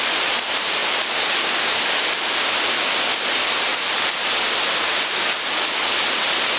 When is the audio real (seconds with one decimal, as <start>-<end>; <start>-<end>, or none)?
0.0-6.6